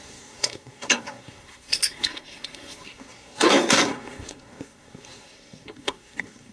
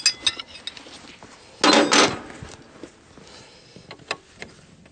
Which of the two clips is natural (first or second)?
second